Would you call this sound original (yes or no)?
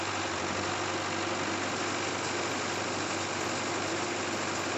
yes